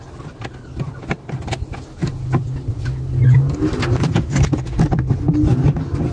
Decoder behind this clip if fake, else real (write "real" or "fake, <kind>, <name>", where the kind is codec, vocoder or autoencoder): real